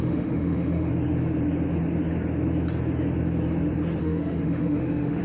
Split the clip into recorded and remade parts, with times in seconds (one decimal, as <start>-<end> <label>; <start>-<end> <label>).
0.0-0.9 remade; 0.9-4.0 recorded; 4.0-5.2 remade